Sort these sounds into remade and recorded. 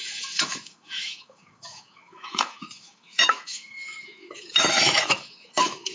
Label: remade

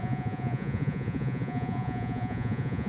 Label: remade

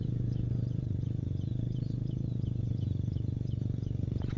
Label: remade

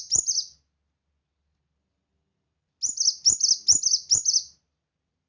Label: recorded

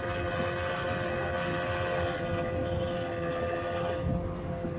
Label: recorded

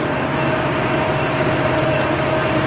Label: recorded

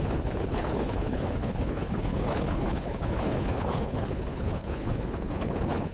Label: remade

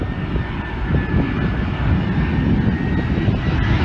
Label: recorded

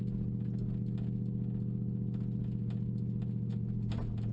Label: recorded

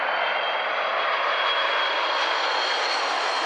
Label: recorded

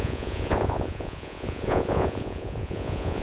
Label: remade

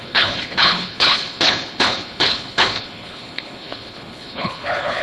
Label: remade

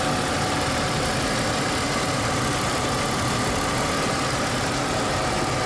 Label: recorded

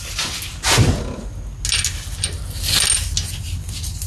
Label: recorded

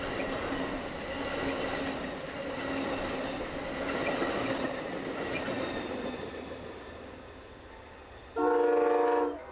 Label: recorded